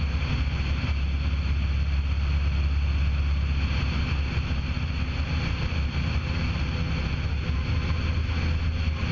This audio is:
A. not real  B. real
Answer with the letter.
B